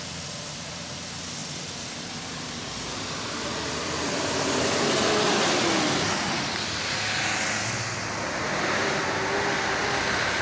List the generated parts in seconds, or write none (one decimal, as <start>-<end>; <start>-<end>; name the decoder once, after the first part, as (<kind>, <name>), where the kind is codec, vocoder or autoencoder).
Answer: 1.4-2.0 (vocoder, BigVGAN v2)